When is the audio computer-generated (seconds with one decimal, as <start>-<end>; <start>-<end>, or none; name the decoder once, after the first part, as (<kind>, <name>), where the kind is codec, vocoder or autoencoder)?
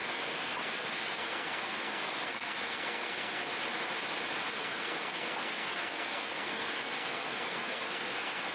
0.0-3.5 (codec, SNAC); 4.5-8.5